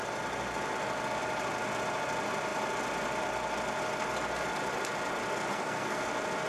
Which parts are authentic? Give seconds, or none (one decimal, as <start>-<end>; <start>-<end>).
0.0-5.5; 6.1-6.5